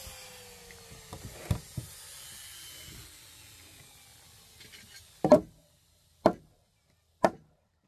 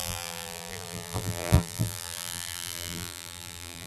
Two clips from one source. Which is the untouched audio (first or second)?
first